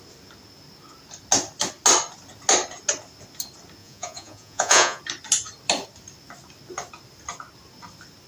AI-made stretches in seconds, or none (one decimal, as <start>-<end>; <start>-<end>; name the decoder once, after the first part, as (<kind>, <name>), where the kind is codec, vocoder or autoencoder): 3.8-5.0 (vocoder, Vocos)